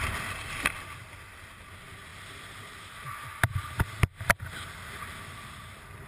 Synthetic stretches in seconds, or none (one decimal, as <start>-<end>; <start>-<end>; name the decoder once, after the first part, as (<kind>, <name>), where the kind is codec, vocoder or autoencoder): none